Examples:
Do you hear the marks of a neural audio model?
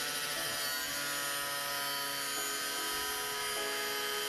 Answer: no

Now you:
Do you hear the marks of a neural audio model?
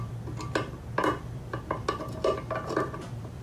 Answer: no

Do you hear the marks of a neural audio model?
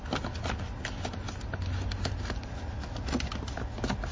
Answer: no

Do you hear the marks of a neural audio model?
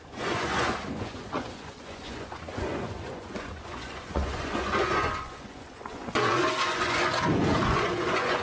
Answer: yes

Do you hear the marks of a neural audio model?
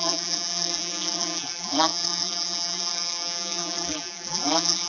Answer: yes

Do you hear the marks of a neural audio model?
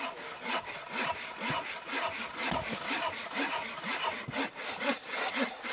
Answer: no